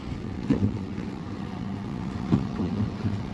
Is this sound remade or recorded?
remade